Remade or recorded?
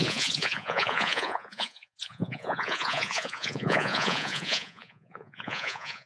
remade